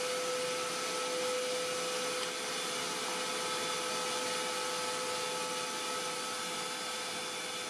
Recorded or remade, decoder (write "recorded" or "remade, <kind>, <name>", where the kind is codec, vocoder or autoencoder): recorded